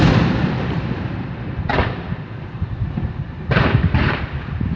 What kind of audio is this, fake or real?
fake